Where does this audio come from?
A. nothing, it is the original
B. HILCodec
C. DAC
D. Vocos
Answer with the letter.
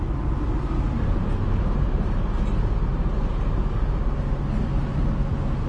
A